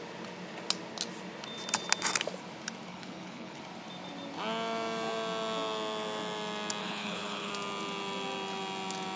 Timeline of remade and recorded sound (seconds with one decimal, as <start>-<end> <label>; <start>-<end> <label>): 0.0-2.9 recorded; 2.9-3.6 remade; 3.6-6.8 recorded; 6.8-7.5 remade; 7.5-9.2 recorded